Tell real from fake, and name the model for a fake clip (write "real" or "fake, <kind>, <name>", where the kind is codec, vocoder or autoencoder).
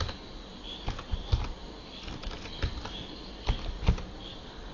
real